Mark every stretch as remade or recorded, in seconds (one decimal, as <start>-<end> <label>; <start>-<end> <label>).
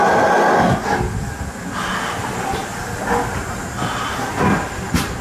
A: 0.0-5.2 recorded